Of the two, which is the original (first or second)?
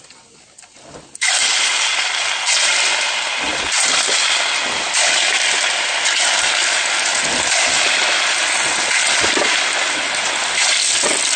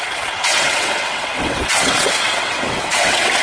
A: first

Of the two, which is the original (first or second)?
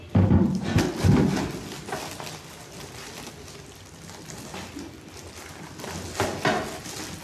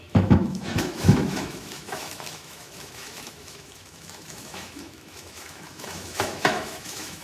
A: first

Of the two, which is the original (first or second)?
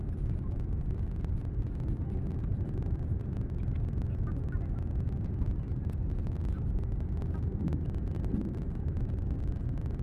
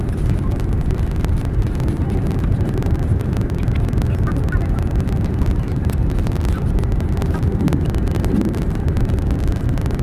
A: first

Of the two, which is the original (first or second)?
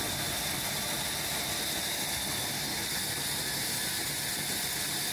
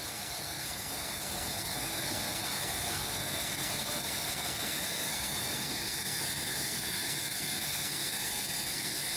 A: first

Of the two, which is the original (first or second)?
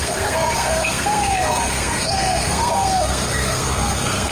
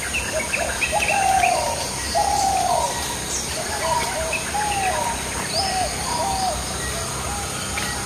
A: second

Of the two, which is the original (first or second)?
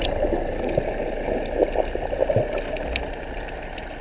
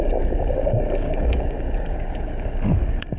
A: first